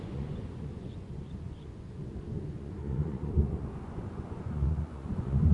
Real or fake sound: fake